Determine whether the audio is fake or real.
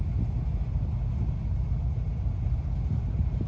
real